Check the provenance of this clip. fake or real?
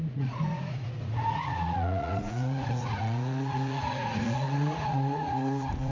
fake